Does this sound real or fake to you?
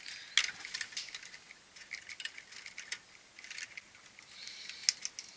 real